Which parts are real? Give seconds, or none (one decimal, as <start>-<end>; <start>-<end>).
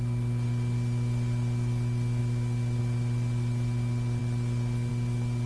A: 0.0-5.5